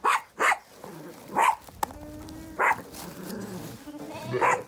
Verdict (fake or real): real